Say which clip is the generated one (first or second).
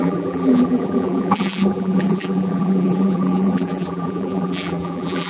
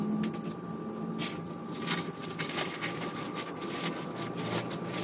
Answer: first